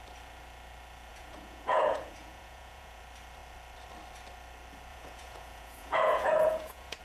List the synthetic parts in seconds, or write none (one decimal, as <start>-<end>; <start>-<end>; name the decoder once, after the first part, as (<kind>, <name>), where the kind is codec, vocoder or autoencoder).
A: 1.1-3.0 (vocoder, Vocos); 4.9-7.0